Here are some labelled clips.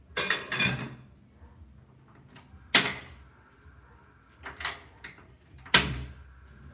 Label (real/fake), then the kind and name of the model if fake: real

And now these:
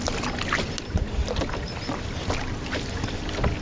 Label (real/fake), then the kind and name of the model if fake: real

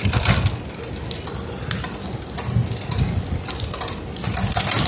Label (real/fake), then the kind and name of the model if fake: real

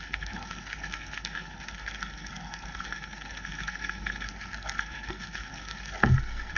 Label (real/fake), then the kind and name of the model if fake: fake, codec, SNAC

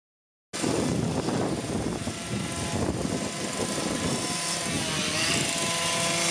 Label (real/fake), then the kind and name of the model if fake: real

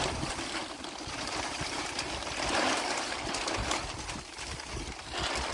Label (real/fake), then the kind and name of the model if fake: real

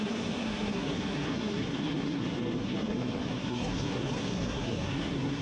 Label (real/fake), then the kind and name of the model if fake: fake, codec, SNAC